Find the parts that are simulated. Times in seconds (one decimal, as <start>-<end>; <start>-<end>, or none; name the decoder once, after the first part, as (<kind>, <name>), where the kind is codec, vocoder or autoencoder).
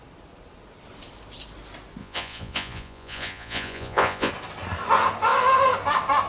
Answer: 2.0-4.3 (vocoder, Vocos)